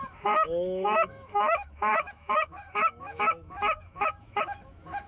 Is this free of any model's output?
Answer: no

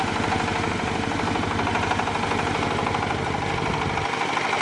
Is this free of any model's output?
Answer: yes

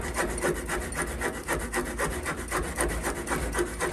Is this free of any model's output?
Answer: yes